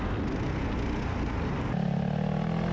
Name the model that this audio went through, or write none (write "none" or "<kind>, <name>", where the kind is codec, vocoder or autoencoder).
none